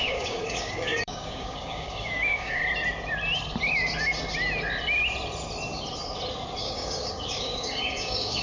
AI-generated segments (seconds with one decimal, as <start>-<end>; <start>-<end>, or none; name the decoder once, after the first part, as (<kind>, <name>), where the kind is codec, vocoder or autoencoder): 0.0-2.6 (codec, DAC); 6.6-8.4